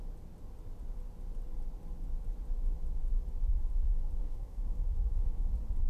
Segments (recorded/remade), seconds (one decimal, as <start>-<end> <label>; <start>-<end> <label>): 0.0-4.2 recorded; 4.2-5.4 remade; 5.4-5.9 recorded